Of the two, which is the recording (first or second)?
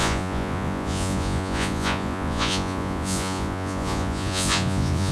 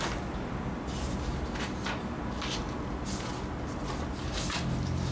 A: second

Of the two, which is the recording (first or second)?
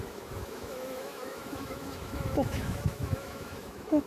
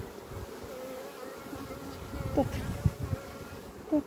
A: second